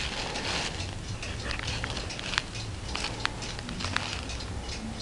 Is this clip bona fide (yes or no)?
yes